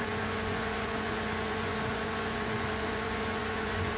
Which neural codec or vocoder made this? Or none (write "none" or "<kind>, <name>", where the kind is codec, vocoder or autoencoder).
vocoder, Vocos